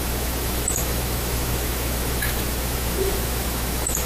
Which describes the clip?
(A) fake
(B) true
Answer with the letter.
A